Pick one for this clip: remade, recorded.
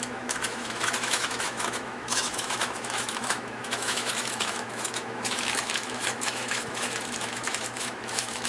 remade